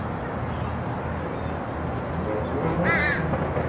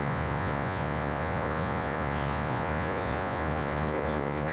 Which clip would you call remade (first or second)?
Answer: second